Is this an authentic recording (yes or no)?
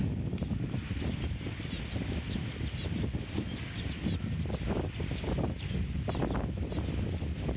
yes